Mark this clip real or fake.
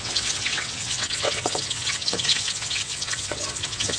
fake